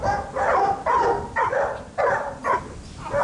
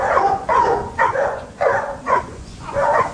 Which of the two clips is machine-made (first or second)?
second